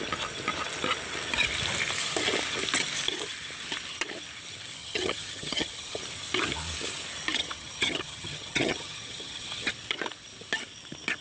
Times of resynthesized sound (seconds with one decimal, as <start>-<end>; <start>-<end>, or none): 4.8-6.0; 7.4-9.7